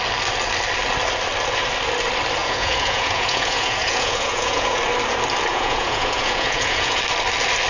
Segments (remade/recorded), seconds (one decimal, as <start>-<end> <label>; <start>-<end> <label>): 0.0-2.4 recorded; 2.4-4.8 remade; 4.8-5.5 recorded; 5.5-7.0 remade; 7.0-7.7 recorded